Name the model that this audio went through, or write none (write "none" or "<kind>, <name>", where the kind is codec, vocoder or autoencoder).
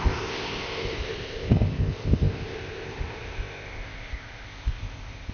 codec, ZipCodec